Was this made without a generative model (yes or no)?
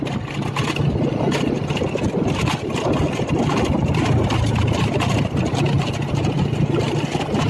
yes